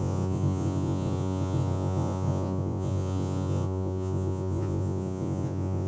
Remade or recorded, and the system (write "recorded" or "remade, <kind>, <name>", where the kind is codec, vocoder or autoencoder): remade, vocoder, Vocos